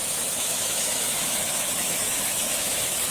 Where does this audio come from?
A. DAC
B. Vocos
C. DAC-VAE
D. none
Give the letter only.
C